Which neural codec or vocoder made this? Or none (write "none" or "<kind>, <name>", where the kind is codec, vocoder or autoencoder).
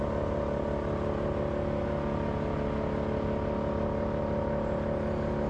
none